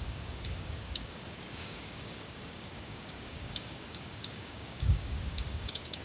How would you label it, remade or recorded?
remade